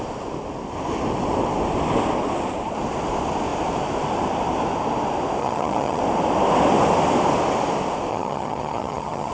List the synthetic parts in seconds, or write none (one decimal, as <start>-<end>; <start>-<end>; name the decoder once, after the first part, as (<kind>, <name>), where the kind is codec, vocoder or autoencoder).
5.4-6.0 (vocoder, HiFi-GAN); 8.1-9.3